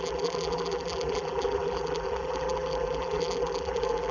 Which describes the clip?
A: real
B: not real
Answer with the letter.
B